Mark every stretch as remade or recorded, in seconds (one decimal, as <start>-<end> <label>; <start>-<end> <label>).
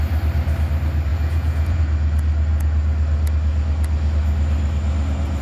0.0-1.1 recorded; 1.1-1.8 remade; 1.8-5.4 recorded